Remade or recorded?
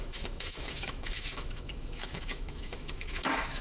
remade